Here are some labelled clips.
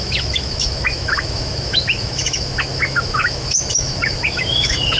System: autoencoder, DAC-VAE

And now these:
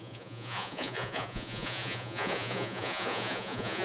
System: vocoder, Vocos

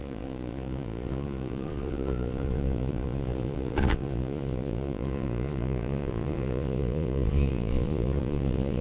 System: vocoder, Vocos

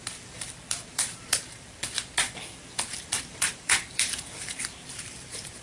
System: vocoder, BigVGAN v2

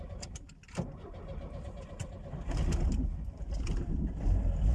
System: none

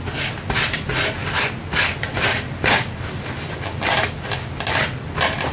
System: none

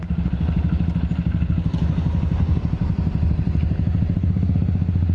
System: none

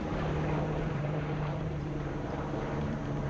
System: vocoder, BigVGAN v2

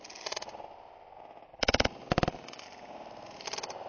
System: none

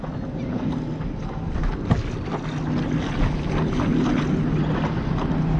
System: none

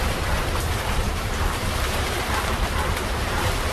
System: vocoder, BigVGAN v2